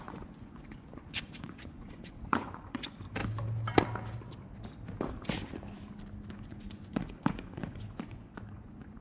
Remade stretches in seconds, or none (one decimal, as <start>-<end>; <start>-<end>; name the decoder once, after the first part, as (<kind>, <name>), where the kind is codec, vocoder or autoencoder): 0.0-3.2 (vocoder, Vocos); 6.3-9.0